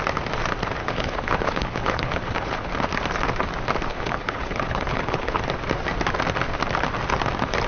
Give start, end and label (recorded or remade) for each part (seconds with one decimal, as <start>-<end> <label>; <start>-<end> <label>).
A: 0.0-0.8 recorded; 0.8-2.7 remade; 2.7-3.9 recorded; 3.9-5.4 remade; 5.4-7.7 recorded